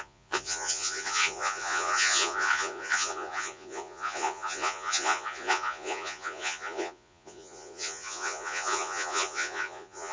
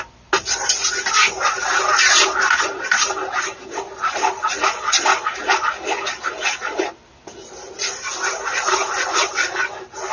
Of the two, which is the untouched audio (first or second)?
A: second